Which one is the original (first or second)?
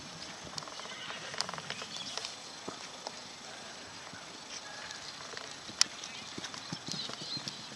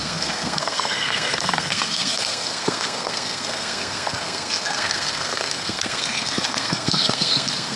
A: first